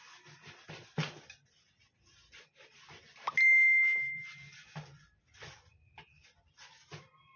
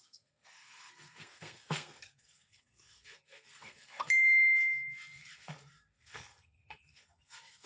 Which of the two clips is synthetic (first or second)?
second